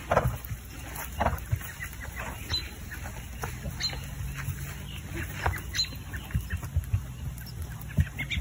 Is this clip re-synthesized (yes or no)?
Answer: no